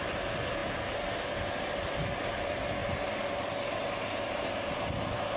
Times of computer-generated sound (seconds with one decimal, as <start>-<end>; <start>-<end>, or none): none